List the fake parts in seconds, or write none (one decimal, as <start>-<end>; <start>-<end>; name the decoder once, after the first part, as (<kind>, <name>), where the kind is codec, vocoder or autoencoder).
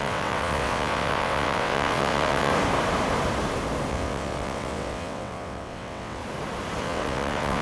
0.0-2.5 (vocoder, WaveNeXt); 3.9-6.2; 6.8-7.6